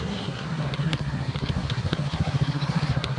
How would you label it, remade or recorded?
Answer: remade